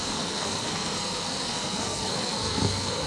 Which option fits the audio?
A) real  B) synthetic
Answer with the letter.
B